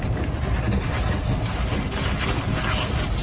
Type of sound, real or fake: real